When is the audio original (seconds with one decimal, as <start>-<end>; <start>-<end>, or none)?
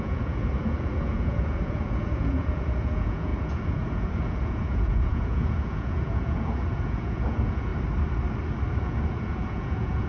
7.7-8.8